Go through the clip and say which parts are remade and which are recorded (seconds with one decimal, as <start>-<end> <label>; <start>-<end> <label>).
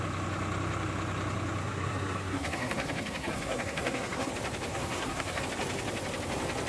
0.0-1.6 recorded; 1.6-4.3 remade; 4.3-4.7 recorded; 4.7-5.4 remade; 5.4-6.7 recorded